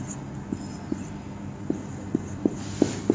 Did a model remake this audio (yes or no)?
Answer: no